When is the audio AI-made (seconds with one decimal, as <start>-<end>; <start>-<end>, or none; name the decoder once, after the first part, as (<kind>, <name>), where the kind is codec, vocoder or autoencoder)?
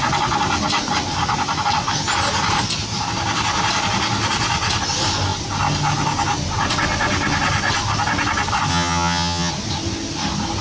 8.7-9.5 (vocoder, HiFi-GAN)